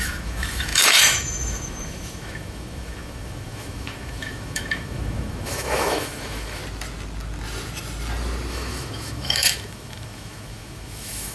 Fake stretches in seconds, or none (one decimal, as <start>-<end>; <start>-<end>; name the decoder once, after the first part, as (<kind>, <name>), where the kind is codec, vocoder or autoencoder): 0.0-6.6 (autoencoder, DAC-VAE); 8.5-11.3